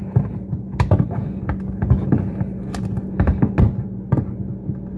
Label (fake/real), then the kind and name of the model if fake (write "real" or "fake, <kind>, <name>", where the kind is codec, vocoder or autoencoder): real